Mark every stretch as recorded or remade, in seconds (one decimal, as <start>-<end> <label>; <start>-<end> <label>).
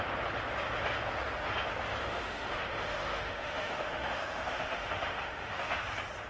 0.0-2.0 recorded; 2.0-5.8 remade; 5.8-6.3 recorded